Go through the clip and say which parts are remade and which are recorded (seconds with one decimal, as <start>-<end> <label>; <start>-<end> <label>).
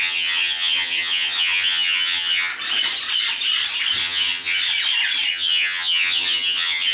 0.0-2.5 remade; 2.5-4.0 recorded; 4.0-4.6 remade; 4.6-5.3 recorded; 5.3-6.9 remade